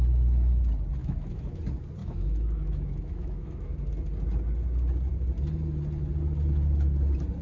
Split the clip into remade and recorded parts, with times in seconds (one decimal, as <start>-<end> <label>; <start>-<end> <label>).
0.0-1.0 recorded; 1.0-1.6 remade; 1.6-2.0 recorded; 2.0-3.9 remade; 3.9-7.4 recorded